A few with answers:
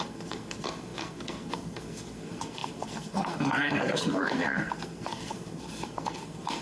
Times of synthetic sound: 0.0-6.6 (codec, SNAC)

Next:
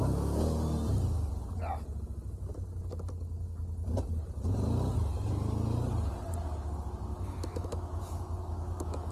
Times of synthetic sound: 7.1-9.1 (autoencoder, DAC-VAE)

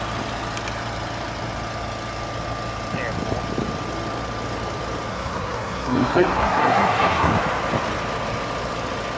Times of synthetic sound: 5.1-7.3 (codec, SNAC)

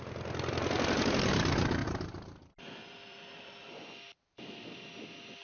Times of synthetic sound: 1.8-3.7 (vocoder, BigVGAN v2)

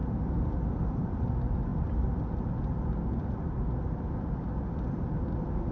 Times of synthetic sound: none

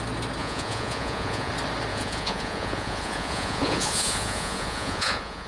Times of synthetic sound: 0.4-1.5 (vocoder, Vocos); 1.9-5.5

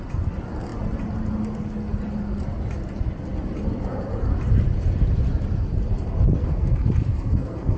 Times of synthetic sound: 6.4-7.8 (codec, SNAC)